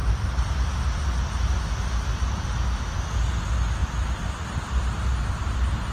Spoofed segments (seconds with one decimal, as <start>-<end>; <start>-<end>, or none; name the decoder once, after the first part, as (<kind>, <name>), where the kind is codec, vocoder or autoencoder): none